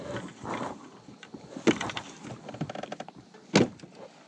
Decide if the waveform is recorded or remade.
recorded